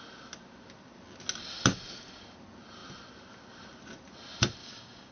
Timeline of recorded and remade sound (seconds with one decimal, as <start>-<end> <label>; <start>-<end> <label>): 0.0-4.6 recorded; 4.6-5.1 remade